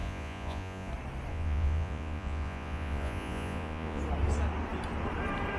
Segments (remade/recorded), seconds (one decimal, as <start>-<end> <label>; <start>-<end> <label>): 0.0-0.9 remade; 0.9-1.3 recorded; 1.3-4.0 remade; 4.0-5.6 recorded